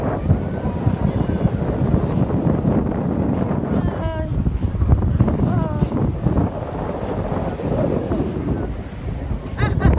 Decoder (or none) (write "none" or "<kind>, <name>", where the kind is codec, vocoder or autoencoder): none